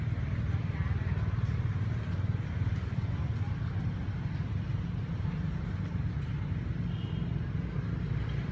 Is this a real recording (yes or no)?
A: yes